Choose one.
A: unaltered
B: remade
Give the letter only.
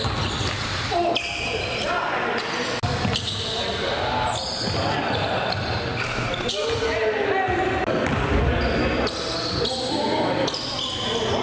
A